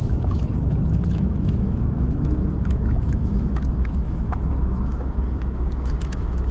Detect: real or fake fake